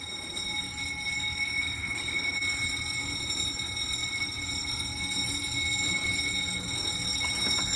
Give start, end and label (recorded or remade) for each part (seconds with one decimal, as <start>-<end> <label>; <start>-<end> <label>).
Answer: 0.0-4.0 recorded; 4.0-4.5 remade; 4.5-7.8 recorded